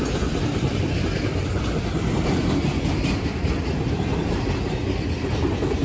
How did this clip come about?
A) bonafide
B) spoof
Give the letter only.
A